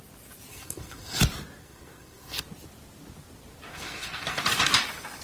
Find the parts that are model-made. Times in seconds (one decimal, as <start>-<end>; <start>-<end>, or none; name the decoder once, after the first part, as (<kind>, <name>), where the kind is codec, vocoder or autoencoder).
0.5-1.2 (codec, SNAC); 1.6-2.4; 3.7-4.4